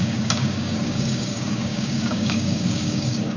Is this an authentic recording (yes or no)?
no